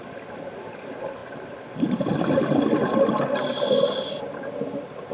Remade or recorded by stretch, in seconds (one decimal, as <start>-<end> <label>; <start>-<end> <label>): 0.0-5.1 recorded